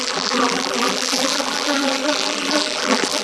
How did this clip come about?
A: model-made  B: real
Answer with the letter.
A